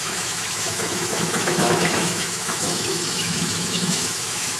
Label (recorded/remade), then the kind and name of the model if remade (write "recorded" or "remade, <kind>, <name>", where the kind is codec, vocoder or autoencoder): remade, autoencoder, DAC-VAE